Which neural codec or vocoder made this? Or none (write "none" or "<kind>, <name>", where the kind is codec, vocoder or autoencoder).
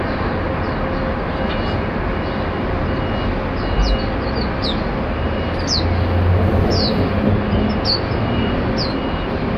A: none